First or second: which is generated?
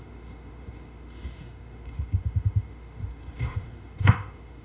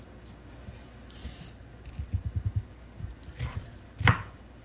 first